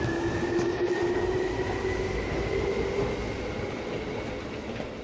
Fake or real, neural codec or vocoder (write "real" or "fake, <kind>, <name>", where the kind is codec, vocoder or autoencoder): real